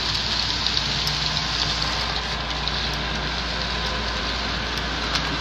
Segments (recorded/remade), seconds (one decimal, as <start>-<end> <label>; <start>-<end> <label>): 0.0-5.4 recorded